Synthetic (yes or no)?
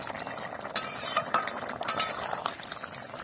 no